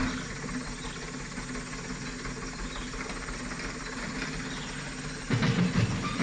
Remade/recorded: recorded